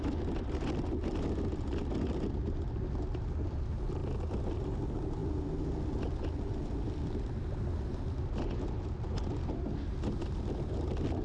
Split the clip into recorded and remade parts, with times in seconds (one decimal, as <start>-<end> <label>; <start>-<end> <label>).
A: 0.0-11.2 recorded

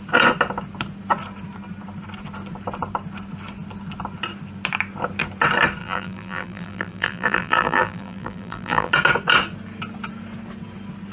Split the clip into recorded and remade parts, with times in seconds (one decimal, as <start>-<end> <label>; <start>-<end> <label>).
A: 0.0-5.8 recorded; 5.8-8.9 remade; 8.9-11.1 recorded

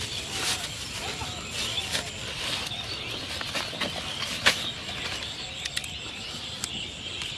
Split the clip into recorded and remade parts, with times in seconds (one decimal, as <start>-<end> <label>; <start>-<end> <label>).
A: 0.0-5.8 recorded; 5.8-6.6 remade; 6.6-7.4 recorded

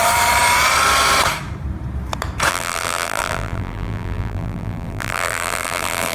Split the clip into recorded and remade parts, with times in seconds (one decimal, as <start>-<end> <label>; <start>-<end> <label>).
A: 0.0-2.5 recorded; 2.5-6.1 remade

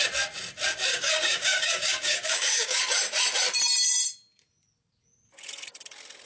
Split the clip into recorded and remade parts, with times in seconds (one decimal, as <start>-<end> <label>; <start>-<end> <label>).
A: 0.0-0.9 recorded; 0.9-2.8 remade; 2.8-6.3 recorded

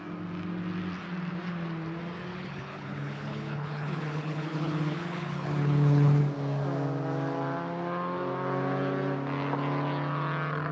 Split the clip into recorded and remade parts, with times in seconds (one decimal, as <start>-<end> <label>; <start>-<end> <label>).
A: 0.0-2.3 recorded; 2.3-6.2 remade; 6.2-10.7 recorded

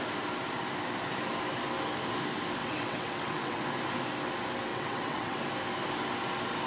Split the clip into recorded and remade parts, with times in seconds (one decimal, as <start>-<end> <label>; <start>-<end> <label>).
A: 0.0-2.6 recorded; 2.6-3.6 remade; 3.6-4.7 recorded; 4.7-5.4 remade; 5.4-6.7 recorded

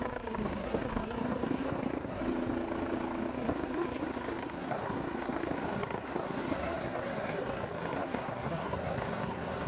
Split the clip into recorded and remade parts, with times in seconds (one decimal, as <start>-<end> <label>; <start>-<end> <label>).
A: 0.0-2.2 remade; 2.2-3.3 recorded; 3.3-9.7 remade